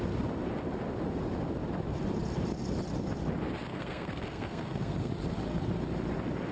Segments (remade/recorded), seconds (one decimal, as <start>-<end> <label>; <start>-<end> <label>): 0.0-3.7 recorded; 3.7-5.1 remade; 5.1-6.5 recorded